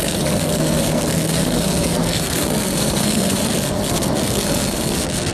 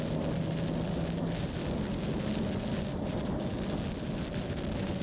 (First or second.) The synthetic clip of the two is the first